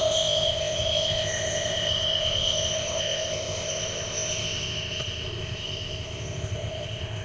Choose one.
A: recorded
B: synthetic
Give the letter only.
B